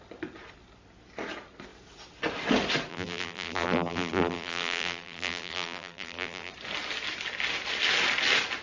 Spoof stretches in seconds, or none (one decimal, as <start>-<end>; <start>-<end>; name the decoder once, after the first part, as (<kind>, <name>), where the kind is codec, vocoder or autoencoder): 2.9-6.5 (vocoder, BigVGAN v2)